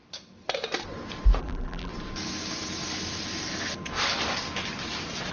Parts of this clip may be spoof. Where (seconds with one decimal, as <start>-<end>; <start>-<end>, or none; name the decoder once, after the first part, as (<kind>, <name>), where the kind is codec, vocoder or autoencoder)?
1.4-1.9 (vocoder, BigVGAN v2)